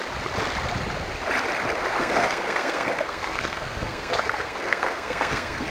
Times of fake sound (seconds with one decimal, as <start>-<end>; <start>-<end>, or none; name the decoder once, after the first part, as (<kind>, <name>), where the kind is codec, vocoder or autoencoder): 2.0-5.7 (codec, SNAC)